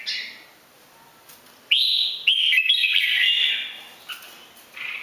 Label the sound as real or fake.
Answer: real